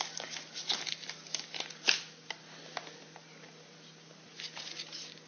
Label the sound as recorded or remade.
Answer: recorded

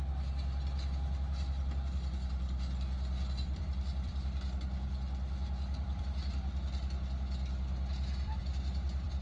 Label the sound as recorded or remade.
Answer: remade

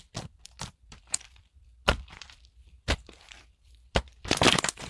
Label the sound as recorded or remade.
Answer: remade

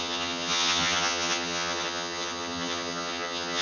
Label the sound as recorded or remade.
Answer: remade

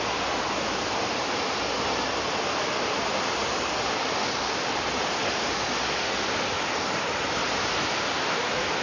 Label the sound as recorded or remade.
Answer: recorded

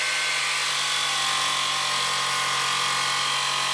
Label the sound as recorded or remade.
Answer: recorded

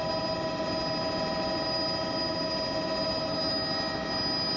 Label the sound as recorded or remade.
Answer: recorded